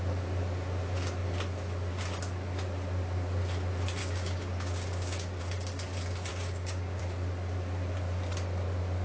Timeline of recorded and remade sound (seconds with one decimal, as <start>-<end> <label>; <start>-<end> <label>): 0.0-4.0 recorded; 4.0-5.4 remade; 5.4-6.3 recorded; 6.3-7.0 remade; 7.0-9.0 recorded